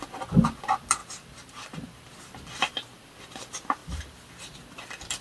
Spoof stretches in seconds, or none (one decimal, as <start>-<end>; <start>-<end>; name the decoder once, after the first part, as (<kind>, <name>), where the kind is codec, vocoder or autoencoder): 1.0-2.1 (vocoder, BigVGAN v2)